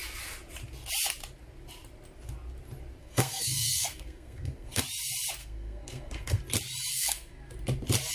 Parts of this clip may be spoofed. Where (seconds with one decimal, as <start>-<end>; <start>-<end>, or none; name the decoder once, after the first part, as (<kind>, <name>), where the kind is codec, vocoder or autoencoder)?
3.0-4.8 (codec, SNAC); 5.4-6.4; 6.9-7.5